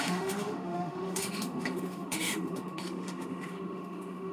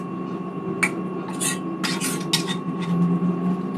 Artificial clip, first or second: first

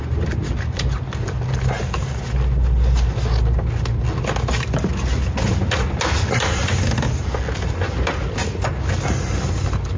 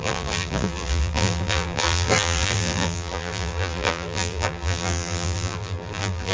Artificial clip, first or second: second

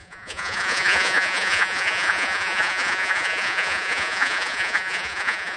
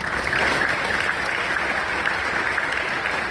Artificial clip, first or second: first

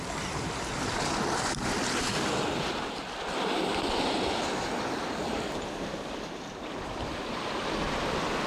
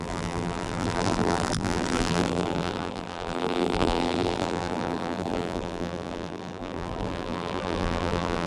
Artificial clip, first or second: second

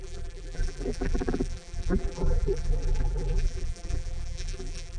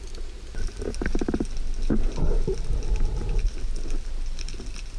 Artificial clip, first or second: first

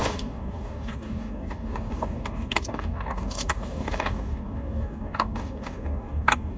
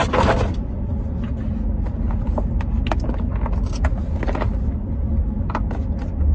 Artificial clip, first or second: first